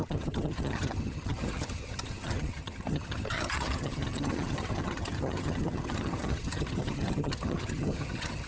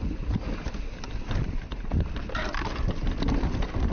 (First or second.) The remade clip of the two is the first